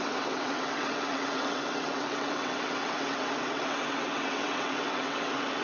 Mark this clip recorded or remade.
remade